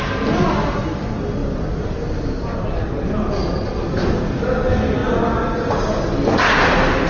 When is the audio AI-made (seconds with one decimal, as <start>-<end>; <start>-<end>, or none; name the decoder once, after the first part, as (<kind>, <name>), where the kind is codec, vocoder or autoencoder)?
none